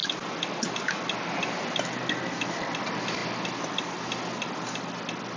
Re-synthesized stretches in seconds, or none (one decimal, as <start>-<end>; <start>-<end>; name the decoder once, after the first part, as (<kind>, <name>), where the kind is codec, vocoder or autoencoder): none